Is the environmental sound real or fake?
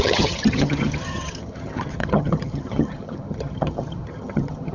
fake